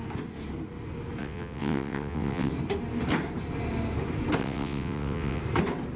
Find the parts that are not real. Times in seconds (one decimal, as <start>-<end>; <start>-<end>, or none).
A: 1.2-2.5; 4.4-5.4